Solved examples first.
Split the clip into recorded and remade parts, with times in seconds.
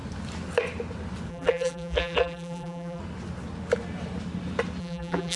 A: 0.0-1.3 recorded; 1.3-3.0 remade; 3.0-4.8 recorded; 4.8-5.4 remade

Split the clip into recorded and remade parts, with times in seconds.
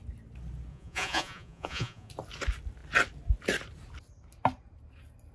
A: 0.0-0.7 recorded; 0.7-2.1 remade; 2.1-5.3 recorded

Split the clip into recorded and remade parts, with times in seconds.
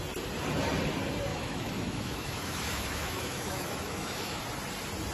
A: 0.0-1.3 recorded; 1.3-4.4 remade; 4.4-5.1 recorded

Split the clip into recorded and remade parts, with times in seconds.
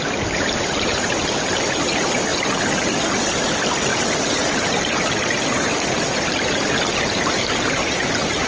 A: 0.0-8.5 recorded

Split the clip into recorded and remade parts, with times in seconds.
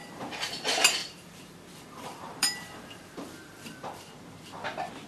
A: 0.0-0.5 remade; 0.5-1.0 recorded; 1.0-4.1 remade; 4.1-5.1 recorded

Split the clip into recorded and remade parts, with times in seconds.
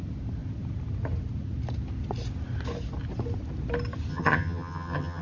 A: 0.0-4.1 recorded; 4.1-5.2 remade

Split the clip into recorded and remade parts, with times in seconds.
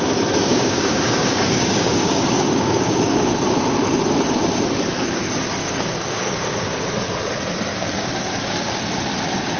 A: 0.0-0.4 recorded; 0.4-3.3 remade; 3.3-5.6 recorded; 5.6-6.9 remade; 6.9-7.7 recorded; 7.7-8.8 remade; 8.8-9.6 recorded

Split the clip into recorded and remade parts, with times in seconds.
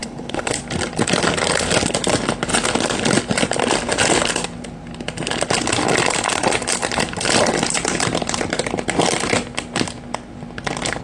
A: 0.0-0.6 remade; 0.6-11.0 recorded